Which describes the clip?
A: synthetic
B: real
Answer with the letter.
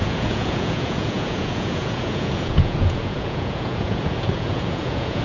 A